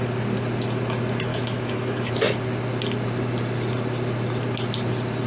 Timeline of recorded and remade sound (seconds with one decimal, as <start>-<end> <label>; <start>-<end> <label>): 0.0-1.3 recorded; 1.3-2.1 remade; 2.1-5.3 recorded